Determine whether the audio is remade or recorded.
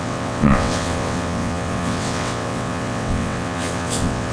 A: remade